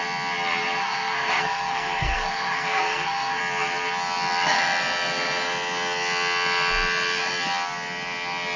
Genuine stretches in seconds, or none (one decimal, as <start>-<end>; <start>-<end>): 0.0-0.8; 3.4-8.6